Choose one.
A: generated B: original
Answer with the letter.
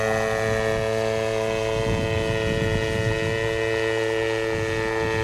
B